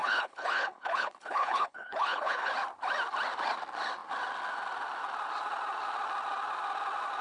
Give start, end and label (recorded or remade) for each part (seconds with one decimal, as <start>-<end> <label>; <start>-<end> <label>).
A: 0.0-2.5 remade; 2.5-7.2 recorded